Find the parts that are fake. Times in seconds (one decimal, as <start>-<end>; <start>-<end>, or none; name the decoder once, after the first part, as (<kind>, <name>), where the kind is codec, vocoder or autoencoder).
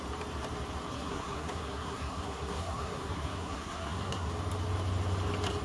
0.9-4.3 (codec, SNAC)